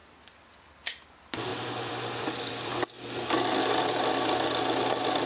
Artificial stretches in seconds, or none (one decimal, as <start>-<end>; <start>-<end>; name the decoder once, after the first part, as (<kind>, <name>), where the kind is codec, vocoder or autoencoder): 1.1-2.7 (vocoder, BigVGAN v2); 4.8-5.3